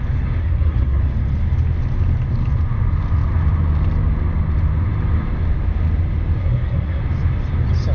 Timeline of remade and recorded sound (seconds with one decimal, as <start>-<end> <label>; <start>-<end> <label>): 0.0-0.4 recorded; 0.4-1.0 remade; 1.0-6.4 recorded; 6.4-7.0 remade; 7.0-7.9 recorded